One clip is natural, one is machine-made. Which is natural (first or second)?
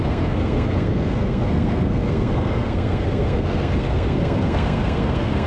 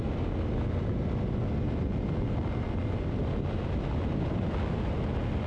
second